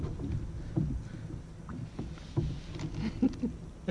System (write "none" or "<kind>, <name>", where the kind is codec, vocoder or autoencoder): none